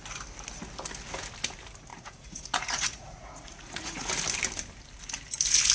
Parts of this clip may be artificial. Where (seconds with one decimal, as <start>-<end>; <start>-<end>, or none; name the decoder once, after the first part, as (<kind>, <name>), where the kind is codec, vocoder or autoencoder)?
1.9-4.1 (vocoder, Vocos)